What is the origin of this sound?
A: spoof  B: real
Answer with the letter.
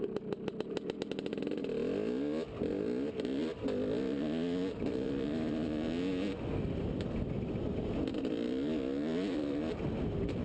B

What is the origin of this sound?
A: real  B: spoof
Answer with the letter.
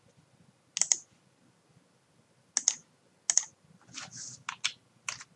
A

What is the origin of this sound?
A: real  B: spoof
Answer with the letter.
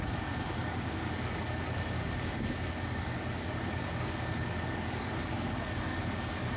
B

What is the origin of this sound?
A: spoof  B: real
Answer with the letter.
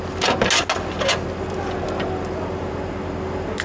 B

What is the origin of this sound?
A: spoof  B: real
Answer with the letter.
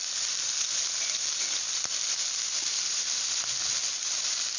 B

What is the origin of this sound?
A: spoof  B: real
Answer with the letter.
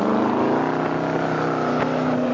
B